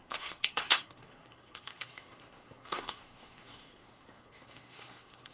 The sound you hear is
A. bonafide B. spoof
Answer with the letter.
B